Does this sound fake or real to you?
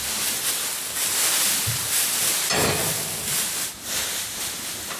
real